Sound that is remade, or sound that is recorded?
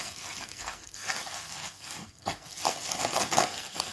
remade